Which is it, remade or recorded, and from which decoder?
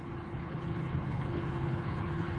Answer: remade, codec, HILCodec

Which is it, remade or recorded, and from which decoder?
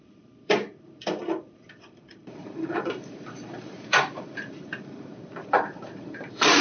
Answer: remade, vocoder, BigVGAN v2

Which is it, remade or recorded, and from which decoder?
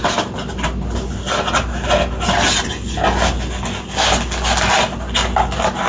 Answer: recorded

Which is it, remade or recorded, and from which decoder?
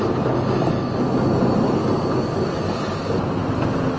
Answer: recorded